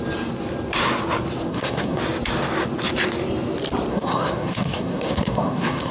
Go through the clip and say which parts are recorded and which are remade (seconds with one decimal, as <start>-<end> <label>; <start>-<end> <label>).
0.0-1.5 recorded; 1.5-2.0 remade; 2.0-3.9 recorded; 3.9-5.9 remade